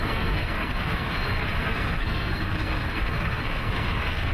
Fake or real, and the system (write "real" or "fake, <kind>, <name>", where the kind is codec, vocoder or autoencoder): fake, codec, SNAC